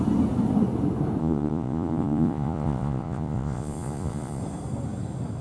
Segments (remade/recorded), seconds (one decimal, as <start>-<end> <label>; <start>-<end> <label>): 0.0-1.2 recorded; 1.2-4.4 remade; 4.4-5.4 recorded